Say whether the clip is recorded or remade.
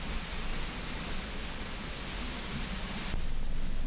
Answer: recorded